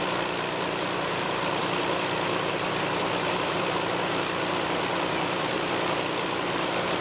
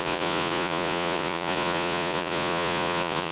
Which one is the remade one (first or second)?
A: second